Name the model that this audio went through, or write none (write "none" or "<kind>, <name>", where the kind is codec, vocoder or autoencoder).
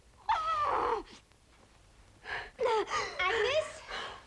vocoder, BigVGAN v2